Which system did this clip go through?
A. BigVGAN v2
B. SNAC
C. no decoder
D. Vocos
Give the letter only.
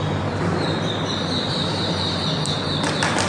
C